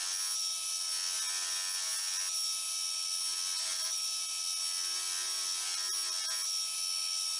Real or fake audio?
real